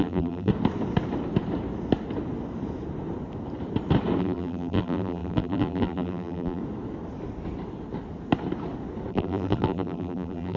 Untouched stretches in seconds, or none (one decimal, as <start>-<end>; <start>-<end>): 0.5-4.2; 6.6-9.1